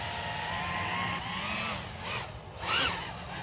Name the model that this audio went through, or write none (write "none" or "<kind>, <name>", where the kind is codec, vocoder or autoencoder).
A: none